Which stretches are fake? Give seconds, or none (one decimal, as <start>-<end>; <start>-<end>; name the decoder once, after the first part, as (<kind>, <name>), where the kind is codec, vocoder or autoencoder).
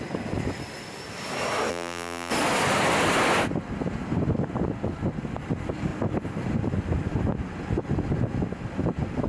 1.7-2.3 (vocoder, BigVGAN v2)